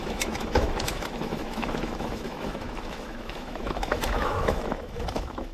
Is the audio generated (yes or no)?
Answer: yes